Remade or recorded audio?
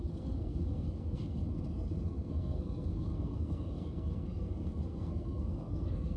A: remade